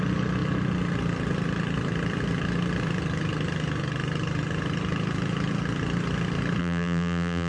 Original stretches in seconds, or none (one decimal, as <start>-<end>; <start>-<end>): 0.0-6.6